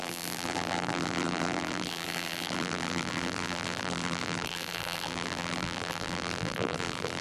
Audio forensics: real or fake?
fake